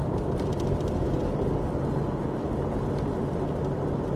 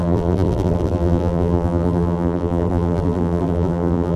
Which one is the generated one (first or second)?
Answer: second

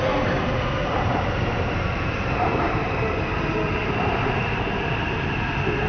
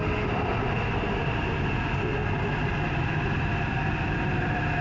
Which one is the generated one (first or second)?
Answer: first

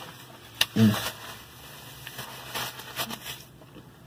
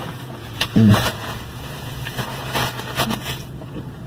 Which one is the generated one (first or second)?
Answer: second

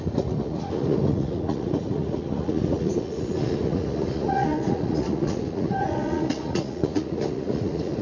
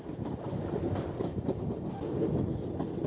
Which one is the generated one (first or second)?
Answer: first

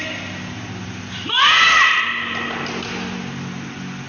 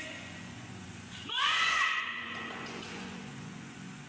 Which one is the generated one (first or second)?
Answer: second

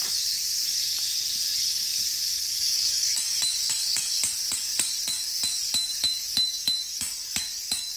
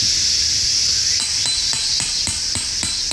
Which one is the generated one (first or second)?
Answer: first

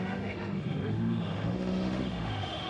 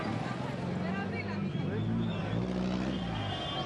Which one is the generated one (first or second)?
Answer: first